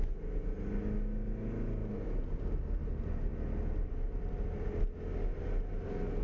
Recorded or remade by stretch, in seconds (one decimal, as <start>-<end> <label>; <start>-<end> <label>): 0.0-6.2 recorded